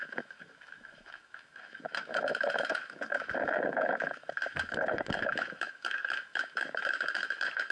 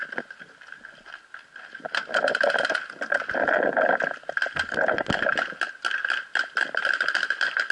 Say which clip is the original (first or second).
second